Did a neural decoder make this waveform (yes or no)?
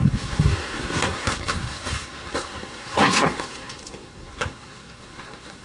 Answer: yes